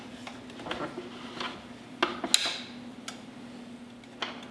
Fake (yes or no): no